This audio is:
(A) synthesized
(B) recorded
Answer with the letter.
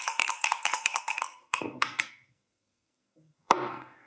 A